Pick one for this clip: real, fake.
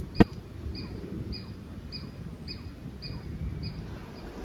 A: real